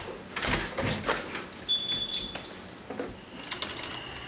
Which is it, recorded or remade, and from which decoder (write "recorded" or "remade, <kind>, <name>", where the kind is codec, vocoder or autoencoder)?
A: recorded